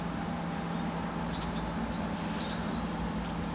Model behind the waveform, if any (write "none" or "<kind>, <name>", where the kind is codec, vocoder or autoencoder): none